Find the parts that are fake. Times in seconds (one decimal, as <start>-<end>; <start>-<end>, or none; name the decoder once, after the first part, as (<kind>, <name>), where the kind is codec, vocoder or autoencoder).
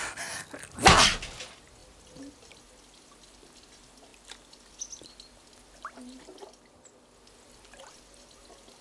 none